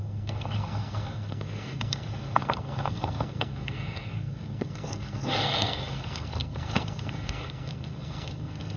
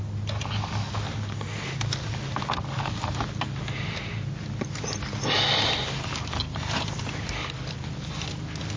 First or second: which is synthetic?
first